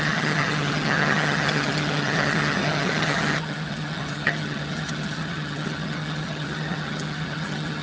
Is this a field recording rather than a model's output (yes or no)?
no